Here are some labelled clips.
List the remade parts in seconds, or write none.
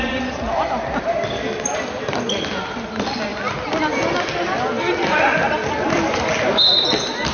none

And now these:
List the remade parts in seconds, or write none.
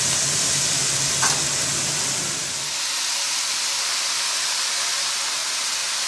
none